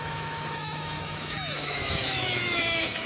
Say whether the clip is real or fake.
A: fake